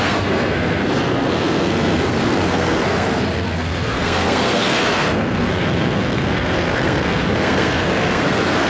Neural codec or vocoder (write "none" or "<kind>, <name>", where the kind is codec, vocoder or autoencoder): codec, SNAC